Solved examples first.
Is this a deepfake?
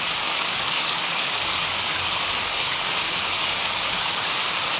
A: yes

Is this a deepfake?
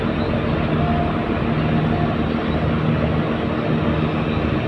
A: no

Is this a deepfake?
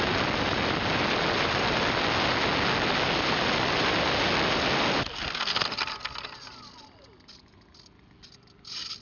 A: no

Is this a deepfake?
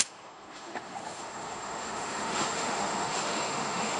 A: yes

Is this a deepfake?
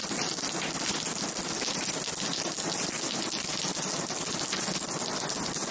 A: no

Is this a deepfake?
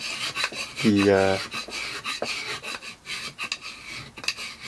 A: no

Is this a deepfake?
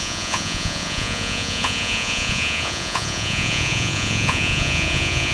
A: yes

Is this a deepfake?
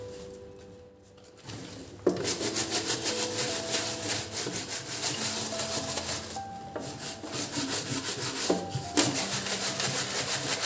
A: no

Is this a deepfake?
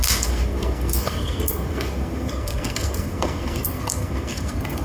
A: yes